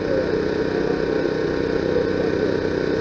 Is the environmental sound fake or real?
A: real